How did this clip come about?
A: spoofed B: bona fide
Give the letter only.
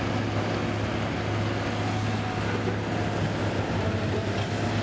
B